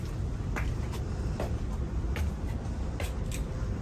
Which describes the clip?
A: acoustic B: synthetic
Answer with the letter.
A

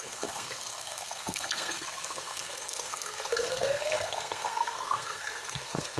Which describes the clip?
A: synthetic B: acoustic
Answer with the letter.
A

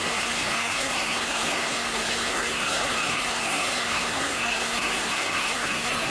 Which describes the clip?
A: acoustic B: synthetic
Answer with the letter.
B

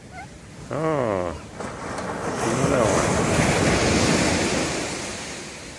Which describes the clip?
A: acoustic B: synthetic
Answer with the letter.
A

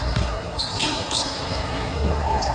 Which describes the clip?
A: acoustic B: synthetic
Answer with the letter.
B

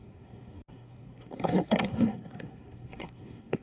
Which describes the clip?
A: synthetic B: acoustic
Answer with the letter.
A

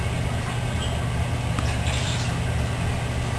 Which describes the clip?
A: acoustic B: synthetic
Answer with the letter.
A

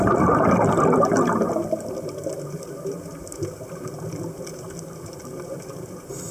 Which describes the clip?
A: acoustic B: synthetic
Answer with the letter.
A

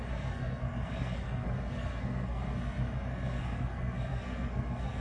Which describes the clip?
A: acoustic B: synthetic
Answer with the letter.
B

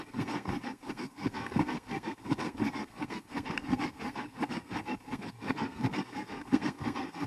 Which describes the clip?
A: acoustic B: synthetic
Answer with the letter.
B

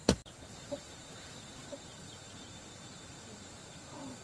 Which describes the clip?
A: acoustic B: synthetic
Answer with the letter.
A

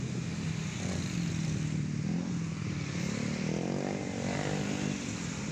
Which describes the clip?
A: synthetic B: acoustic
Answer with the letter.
B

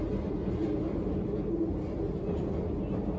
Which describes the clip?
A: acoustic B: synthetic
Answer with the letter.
A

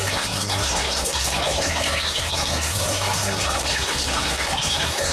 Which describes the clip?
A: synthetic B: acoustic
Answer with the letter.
A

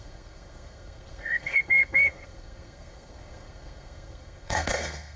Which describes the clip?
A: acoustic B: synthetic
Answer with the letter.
B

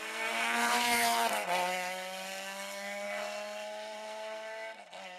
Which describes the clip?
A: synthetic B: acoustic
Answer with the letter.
A